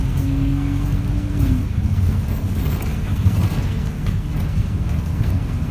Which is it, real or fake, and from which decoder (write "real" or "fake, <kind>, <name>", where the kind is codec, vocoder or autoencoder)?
fake, codec, SNAC